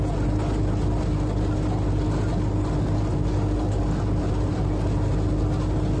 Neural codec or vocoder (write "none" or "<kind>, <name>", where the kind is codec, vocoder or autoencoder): none